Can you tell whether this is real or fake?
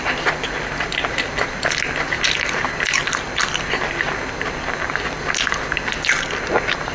real